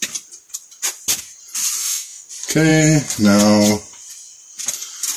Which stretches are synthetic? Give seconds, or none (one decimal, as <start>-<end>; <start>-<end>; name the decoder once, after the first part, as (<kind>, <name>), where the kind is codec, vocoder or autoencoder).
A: 1.8-2.3 (autoencoder, DAC-VAE)